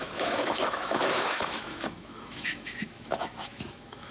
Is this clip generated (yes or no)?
yes